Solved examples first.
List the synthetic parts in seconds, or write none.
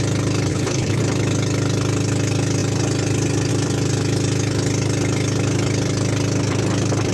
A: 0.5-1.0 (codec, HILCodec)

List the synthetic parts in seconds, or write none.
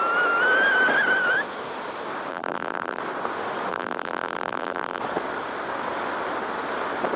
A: 2.3-3.0 (vocoder, BigVGAN v2); 3.7-5.0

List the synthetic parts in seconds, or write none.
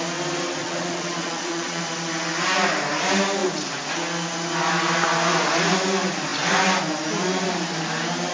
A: 0.6-1.8 (vocoder, Vocos)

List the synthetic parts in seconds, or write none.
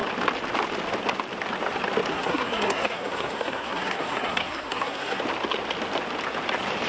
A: 2.1-5.2 (codec, SNAC)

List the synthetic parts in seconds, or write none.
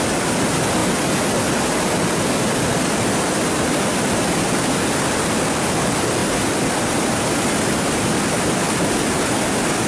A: 6.2-8.8 (vocoder, BigVGAN v2)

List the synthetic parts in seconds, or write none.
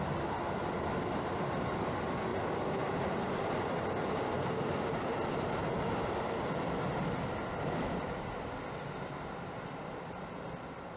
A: 0.0-2.3 (vocoder, BigVGAN v2); 6.0-11.0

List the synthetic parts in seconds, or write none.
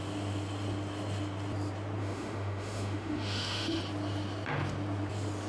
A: 2.0-3.8 (autoencoder, DAC-VAE)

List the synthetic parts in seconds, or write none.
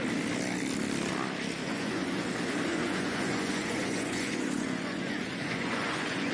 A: 1.6-2.3 (vocoder, Vocos); 2.7-6.3